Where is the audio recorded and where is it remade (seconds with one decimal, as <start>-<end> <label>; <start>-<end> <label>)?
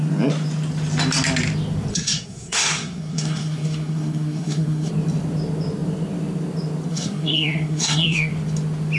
0.0-1.9 recorded; 1.9-4.9 remade; 4.9-6.9 recorded; 6.9-8.3 remade; 8.3-9.0 recorded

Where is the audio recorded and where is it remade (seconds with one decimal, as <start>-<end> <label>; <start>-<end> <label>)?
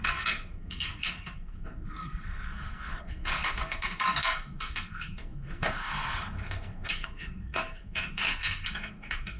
0.0-9.4 remade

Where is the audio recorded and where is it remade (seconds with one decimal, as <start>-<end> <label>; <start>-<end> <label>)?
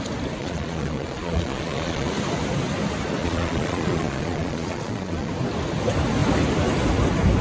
0.0-0.4 recorded; 0.4-2.1 remade; 2.1-3.2 recorded; 3.2-5.3 remade; 5.3-7.4 recorded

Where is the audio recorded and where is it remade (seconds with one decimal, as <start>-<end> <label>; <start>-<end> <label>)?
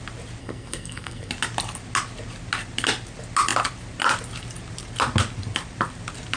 0.0-0.4 recorded; 0.4-1.3 remade; 1.3-6.4 recorded